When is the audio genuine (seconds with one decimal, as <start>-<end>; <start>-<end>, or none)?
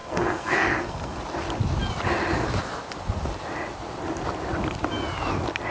1.2-5.7